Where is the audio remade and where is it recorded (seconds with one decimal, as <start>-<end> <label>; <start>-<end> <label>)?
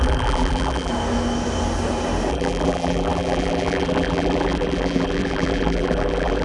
0.0-0.9 remade; 0.9-2.3 recorded; 2.3-6.4 remade